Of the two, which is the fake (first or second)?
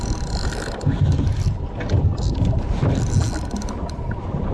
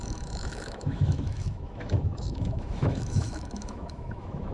second